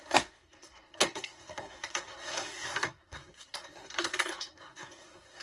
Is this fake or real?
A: fake